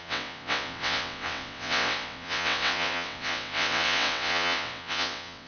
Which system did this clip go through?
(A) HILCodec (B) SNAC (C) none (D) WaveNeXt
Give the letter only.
D